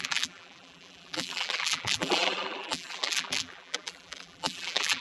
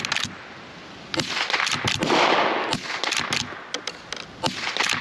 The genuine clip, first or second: second